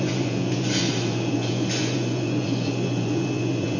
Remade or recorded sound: remade